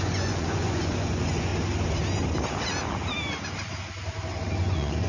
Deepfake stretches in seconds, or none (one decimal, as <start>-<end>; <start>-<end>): 0.0-1.5; 4.6-5.1